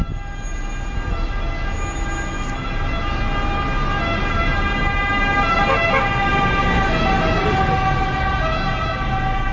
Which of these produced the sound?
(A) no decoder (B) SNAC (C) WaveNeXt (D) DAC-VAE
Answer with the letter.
A